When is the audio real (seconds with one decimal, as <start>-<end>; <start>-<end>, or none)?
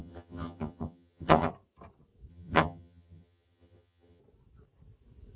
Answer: 1.5-2.3; 4.2-5.4